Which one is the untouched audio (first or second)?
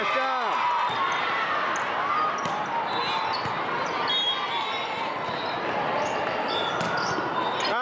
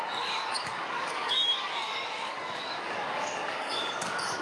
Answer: first